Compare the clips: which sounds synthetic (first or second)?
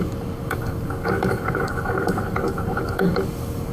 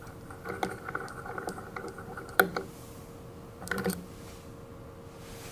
first